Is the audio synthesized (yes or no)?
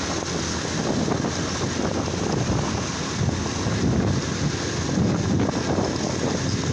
no